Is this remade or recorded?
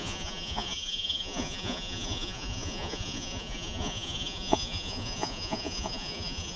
remade